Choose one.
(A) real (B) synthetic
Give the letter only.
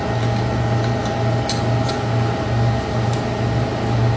A